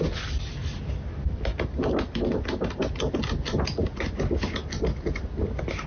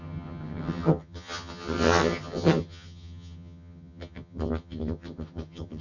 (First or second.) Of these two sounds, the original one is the first